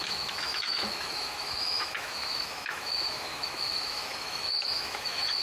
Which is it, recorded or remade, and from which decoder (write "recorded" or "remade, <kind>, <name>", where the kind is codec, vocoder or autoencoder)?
remade, autoencoder, DAC-VAE